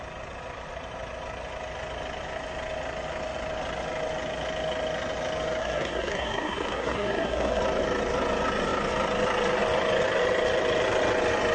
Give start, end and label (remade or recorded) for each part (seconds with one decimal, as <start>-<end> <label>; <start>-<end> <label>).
0.0-5.6 recorded; 5.6-7.6 remade; 7.6-11.5 recorded